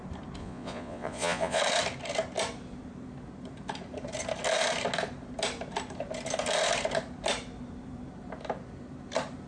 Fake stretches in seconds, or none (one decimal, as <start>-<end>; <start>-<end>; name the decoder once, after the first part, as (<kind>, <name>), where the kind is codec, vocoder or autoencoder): 0.4-1.6 (vocoder, Vocos)